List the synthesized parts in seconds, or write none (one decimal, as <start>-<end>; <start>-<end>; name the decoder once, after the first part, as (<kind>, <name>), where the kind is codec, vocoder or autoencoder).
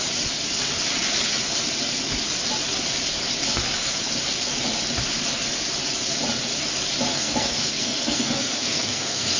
7.1-9.4 (codec, SNAC)